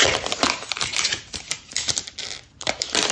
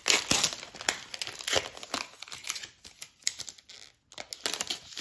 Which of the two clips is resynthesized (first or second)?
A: first